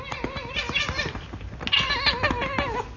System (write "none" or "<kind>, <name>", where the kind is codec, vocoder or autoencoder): none